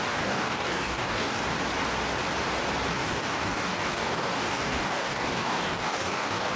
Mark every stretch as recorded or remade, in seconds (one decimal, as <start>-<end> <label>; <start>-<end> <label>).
0.0-1.4 remade; 1.4-2.9 recorded; 2.9-6.6 remade